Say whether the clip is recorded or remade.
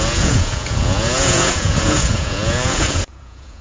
remade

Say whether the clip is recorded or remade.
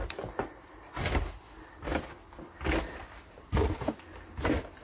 recorded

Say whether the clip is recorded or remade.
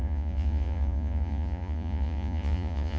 remade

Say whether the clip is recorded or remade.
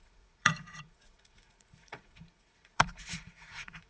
remade